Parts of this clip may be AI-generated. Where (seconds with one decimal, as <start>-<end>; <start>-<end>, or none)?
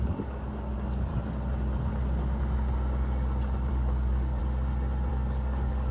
0.0-1.1; 3.7-4.4; 5.1-5.9